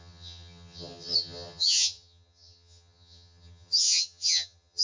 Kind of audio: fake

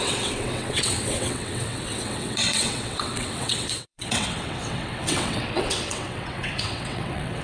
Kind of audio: fake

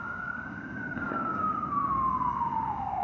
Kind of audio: fake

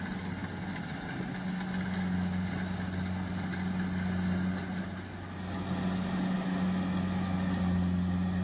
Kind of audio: real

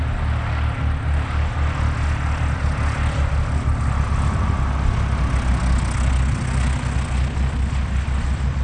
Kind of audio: real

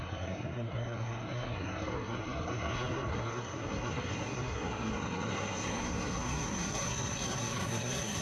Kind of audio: fake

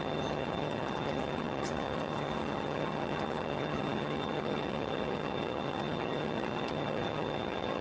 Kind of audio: fake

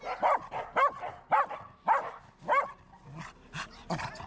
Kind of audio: real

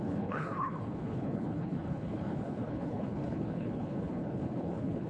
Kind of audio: fake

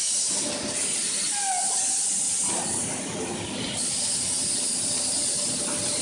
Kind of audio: real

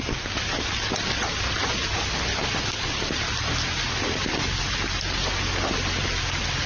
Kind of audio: real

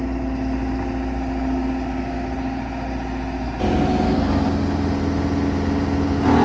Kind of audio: real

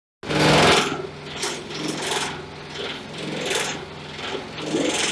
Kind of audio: real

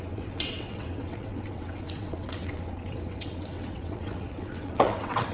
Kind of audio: fake